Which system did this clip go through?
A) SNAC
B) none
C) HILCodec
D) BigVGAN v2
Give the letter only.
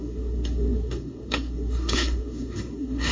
A